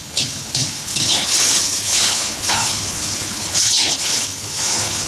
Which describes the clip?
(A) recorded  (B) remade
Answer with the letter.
B